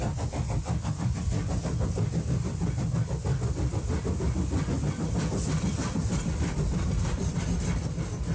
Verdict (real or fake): real